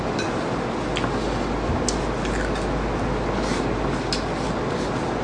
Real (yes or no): yes